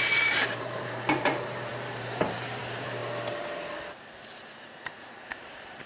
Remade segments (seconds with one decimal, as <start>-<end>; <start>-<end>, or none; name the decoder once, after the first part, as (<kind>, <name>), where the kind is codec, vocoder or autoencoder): 0.0-3.0 (vocoder, BigVGAN v2); 5.0-5.9